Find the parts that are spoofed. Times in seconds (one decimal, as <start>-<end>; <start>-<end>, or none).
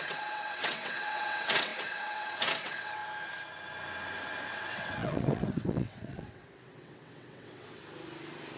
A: 0.0-3.0; 4.5-7.8